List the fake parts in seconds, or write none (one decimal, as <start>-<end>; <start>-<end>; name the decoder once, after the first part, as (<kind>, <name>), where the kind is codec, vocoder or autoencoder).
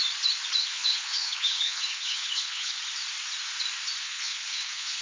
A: 0.6-2.8 (codec, HILCodec); 4.0-5.0